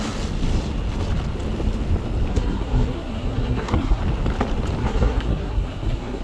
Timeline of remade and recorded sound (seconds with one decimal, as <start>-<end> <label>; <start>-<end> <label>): 0.0-2.3 recorded; 2.3-4.0 remade; 4.0-4.8 recorded; 4.8-6.2 remade